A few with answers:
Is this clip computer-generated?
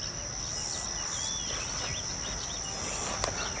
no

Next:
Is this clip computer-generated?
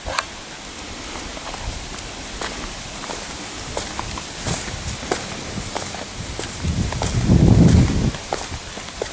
no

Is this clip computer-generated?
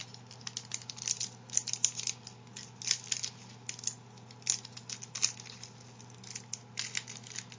no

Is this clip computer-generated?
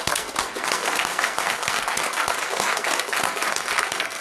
yes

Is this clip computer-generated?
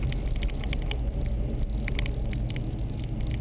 no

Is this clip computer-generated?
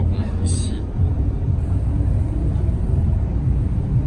yes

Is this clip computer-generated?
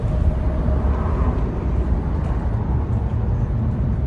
no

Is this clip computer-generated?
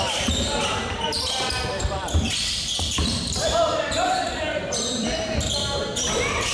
yes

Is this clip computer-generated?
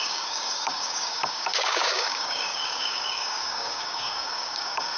yes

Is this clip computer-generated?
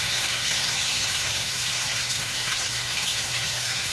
yes